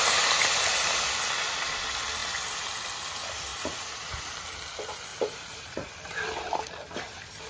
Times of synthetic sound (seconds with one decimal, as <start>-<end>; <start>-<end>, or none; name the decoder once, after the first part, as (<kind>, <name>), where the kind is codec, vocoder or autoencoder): 3.5-4.3 (vocoder, Vocos); 5.1-5.9